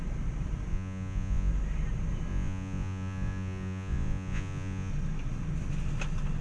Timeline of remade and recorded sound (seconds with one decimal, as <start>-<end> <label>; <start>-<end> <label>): 0.0-0.7 recorded; 0.7-1.5 remade; 1.5-2.3 recorded; 2.3-4.9 remade; 4.9-6.4 recorded